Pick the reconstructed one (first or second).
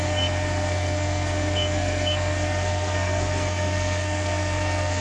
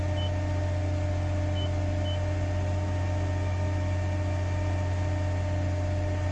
first